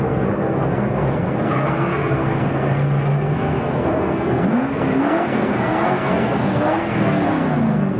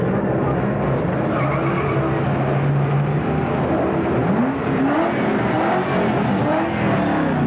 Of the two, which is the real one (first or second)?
second